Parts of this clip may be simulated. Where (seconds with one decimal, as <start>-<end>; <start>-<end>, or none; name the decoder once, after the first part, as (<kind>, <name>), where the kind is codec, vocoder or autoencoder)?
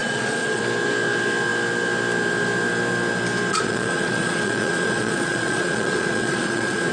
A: 0.0-0.6 (vocoder, Vocos); 3.5-6.9